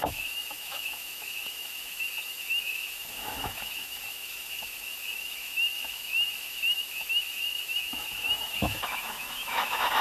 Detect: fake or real fake